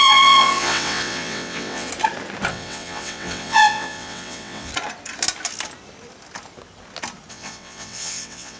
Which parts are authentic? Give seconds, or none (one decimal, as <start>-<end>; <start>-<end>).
1.9-2.5; 4.7-7.3